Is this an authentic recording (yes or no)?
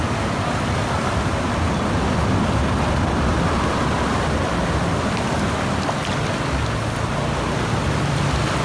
yes